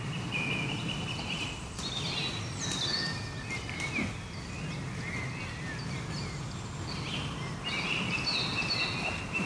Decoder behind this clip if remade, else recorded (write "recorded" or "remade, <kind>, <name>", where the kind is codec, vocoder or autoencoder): recorded